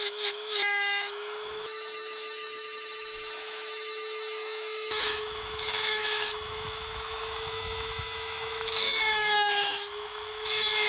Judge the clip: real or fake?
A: fake